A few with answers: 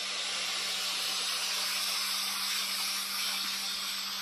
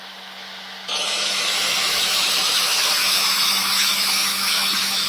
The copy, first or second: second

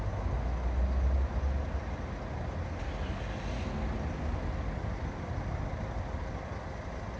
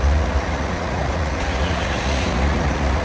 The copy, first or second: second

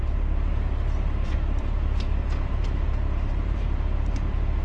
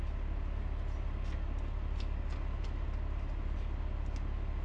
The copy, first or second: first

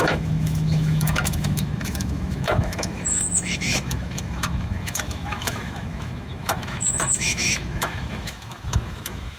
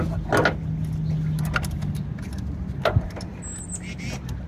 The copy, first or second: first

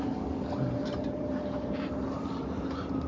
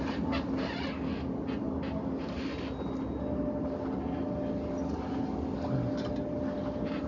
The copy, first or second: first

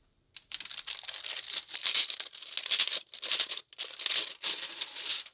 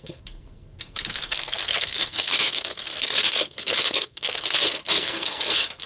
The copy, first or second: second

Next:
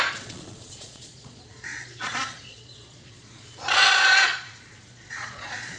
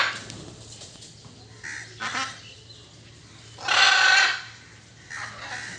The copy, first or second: first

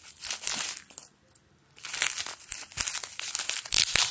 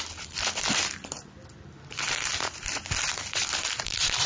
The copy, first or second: second